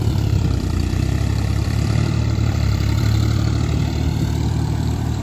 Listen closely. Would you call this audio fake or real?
fake